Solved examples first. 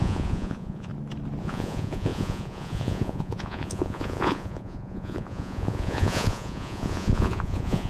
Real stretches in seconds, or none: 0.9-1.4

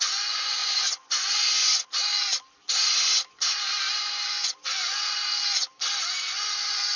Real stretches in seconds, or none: 2.0-4.0; 5.4-6.0

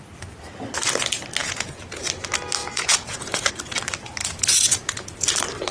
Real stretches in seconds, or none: 0.0-1.4; 2.0-2.6; 3.5-4.2; 5.3-5.7

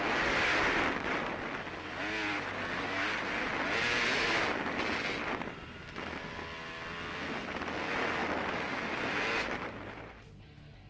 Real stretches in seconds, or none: 0.0-10.9

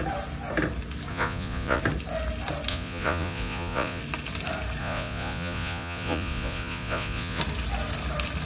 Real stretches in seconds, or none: 0.0-1.1; 1.8-2.7; 4.0-4.8; 7.4-8.5

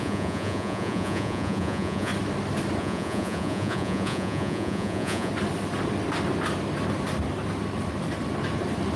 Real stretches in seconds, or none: 2.1-2.8; 5.3-9.0